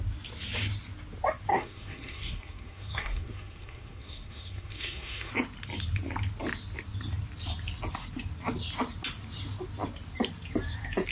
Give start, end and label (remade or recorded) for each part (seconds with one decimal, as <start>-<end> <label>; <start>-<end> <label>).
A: 0.0-1.5 recorded; 1.5-5.3 remade; 5.3-11.1 recorded